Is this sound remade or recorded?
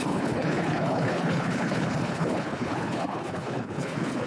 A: remade